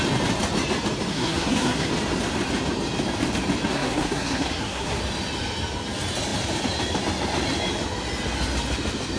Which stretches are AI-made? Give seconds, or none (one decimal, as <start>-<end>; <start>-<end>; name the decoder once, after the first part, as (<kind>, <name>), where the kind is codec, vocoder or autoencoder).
1.1-1.9 (codec, SNAC); 3.7-5.0